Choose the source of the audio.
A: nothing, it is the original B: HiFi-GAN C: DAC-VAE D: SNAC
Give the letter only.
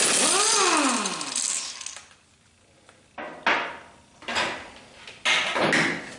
A